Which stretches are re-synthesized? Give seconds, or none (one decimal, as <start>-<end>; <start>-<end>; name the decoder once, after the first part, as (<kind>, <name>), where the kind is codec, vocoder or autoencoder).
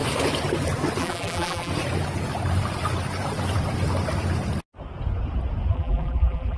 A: 1.0-1.7 (vocoder, BigVGAN v2); 5.7-6.6